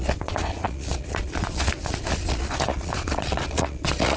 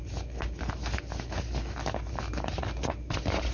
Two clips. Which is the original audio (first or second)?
second